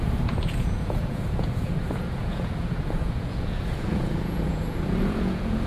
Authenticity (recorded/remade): remade